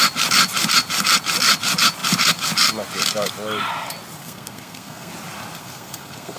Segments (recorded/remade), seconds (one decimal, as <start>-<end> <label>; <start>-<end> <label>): 0.0-4.2 recorded; 4.2-5.1 remade; 5.1-5.6 recorded; 5.6-6.4 remade